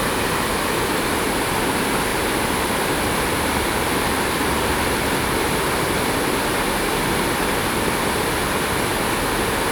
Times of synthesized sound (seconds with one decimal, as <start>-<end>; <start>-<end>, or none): 2.1-5.1